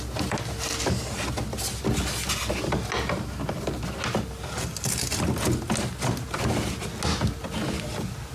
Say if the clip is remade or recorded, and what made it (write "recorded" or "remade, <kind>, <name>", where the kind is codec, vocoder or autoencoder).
recorded